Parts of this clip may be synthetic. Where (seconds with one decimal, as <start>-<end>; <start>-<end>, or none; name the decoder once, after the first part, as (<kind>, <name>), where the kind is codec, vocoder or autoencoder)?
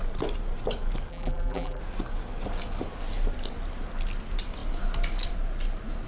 1.1-1.8 (vocoder, BigVGAN v2)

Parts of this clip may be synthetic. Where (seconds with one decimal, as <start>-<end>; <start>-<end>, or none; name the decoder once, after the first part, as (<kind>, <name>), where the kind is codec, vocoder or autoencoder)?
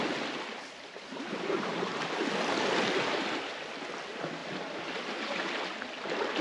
none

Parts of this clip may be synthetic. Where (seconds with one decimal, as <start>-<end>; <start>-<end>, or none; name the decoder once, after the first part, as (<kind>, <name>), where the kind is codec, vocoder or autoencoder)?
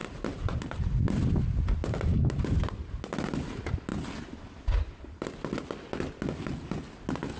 0.0-0.8 (vocoder, BigVGAN v2)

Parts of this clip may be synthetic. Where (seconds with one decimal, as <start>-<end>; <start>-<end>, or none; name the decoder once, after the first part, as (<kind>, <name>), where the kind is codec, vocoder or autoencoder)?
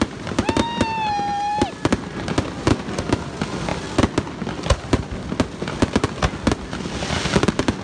none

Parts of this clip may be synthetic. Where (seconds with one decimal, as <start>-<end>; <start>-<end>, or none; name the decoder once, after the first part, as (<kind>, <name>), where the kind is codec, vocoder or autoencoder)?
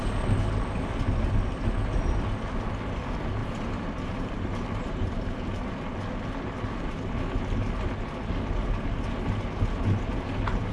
3.4-5.7 (vocoder, BigVGAN v2)